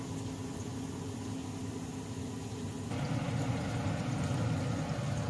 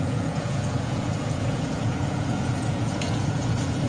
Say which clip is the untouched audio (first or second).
first